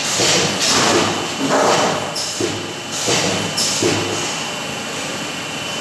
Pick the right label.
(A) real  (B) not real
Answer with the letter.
A